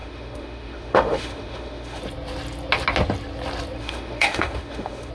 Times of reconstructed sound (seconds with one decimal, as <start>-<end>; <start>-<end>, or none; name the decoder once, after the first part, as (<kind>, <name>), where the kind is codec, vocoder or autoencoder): 0.0-2.0 (autoencoder, DAC-VAE); 3.8-5.1